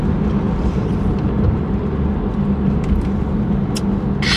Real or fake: real